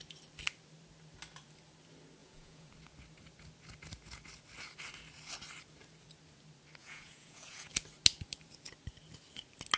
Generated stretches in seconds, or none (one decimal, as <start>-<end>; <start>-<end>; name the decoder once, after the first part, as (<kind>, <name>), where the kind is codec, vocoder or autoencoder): 2.2-2.7 (vocoder, Vocos); 6.8-7.7